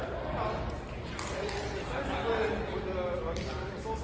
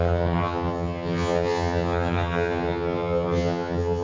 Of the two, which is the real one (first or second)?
first